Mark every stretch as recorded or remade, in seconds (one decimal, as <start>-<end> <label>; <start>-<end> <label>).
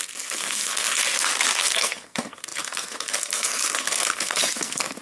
0.0-1.0 remade; 1.0-1.6 recorded; 1.6-5.0 remade